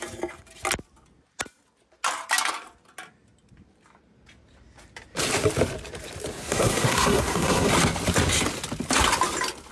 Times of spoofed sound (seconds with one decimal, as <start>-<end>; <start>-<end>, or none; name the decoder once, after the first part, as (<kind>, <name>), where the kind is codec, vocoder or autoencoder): 6.4-7.7 (codec, SNAC)